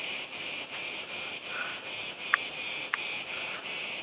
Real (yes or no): yes